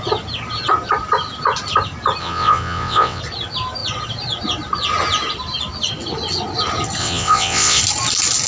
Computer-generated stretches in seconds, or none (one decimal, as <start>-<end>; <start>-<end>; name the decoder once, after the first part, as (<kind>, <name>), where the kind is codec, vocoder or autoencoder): 2.2-3.2 (vocoder, WaveNeXt); 7.0-7.8

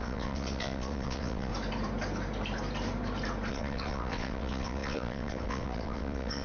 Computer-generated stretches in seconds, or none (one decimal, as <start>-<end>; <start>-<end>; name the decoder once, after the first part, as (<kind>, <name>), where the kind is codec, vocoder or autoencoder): 0.0-1.5 (vocoder, WaveNeXt); 3.5-6.4

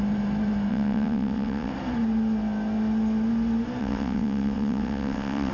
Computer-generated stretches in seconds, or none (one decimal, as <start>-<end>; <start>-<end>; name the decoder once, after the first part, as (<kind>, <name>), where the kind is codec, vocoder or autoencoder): 0.7-1.7 (vocoder, WaveNeXt); 3.8-5.5